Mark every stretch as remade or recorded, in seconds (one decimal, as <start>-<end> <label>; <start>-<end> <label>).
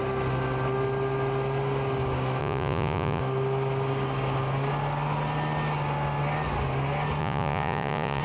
0.0-2.4 recorded; 2.4-3.2 remade; 3.2-7.2 recorded; 7.2-8.2 remade